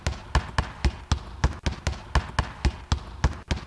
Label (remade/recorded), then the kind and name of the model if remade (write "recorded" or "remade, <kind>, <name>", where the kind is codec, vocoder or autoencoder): recorded